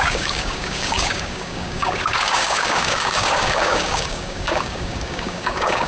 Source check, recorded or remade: remade